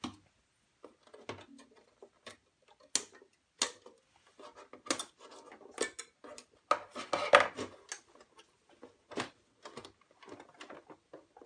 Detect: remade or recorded recorded